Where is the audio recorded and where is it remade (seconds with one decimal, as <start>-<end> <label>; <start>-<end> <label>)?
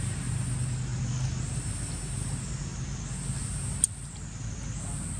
0.0-5.2 recorded